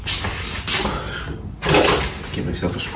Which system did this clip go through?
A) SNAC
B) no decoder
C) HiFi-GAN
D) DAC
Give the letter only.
B